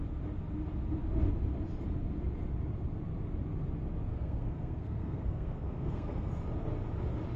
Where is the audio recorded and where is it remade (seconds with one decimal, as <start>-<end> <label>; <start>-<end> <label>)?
0.0-4.1 recorded; 4.1-6.3 remade; 6.3-7.4 recorded